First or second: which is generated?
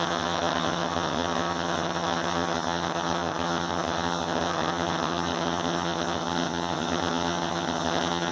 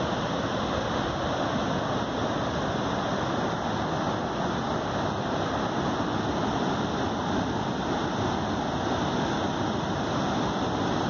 first